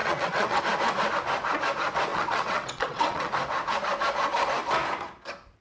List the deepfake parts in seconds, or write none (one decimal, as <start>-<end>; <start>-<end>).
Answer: 0.0-0.6; 2.1-3.3